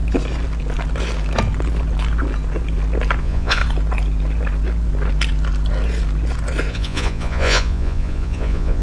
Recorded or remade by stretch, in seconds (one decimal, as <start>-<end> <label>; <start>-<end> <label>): 0.0-3.2 recorded; 3.2-3.6 remade; 3.6-6.7 recorded; 6.7-8.8 remade